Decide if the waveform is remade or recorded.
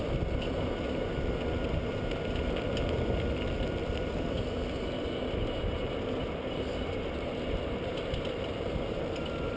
recorded